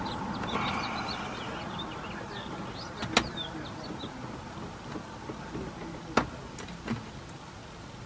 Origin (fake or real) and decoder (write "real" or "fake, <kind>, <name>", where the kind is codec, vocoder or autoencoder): real